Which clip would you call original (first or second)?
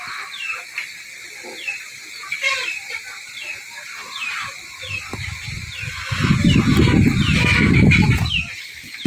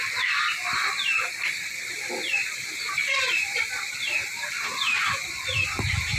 first